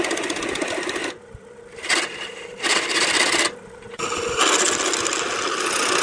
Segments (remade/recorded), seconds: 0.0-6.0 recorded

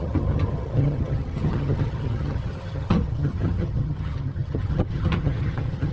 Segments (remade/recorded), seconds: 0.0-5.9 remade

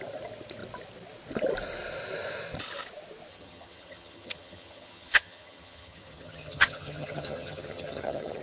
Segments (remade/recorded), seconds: 0.0-3.3 recorded; 3.3-8.4 remade

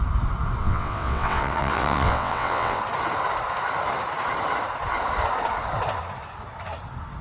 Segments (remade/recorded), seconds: 0.0-0.6 recorded; 0.6-2.8 remade; 2.8-7.2 recorded

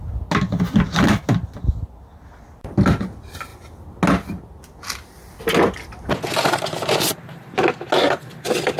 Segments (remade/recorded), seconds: 0.0-8.8 recorded

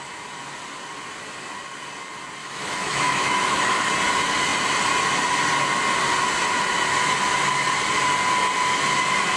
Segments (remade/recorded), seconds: 0.0-2.4 recorded; 2.4-3.9 remade; 3.9-9.4 recorded

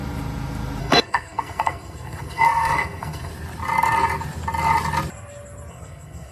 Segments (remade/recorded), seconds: 0.0-0.8 recorded; 0.8-3.3 remade; 3.3-5.7 recorded; 5.7-6.3 remade